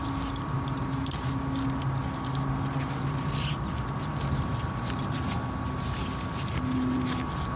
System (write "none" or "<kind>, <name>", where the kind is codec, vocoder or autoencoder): none